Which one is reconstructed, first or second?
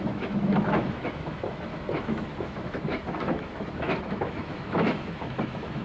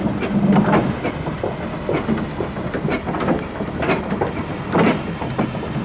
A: first